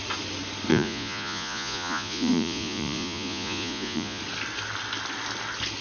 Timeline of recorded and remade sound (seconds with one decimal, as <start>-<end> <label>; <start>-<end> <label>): 0.0-0.7 recorded; 0.7-4.2 remade; 4.2-5.8 recorded